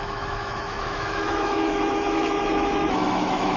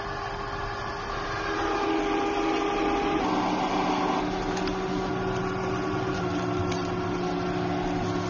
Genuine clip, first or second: second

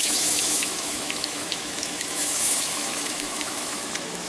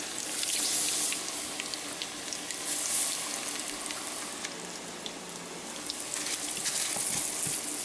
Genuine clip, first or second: second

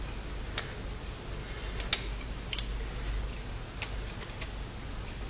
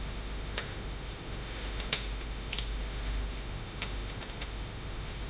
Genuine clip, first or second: first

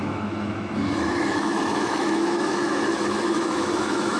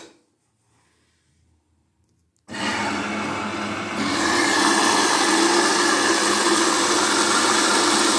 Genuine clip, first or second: second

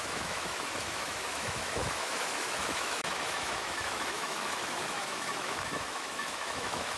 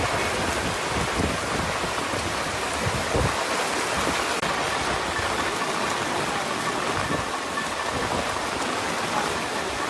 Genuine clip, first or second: second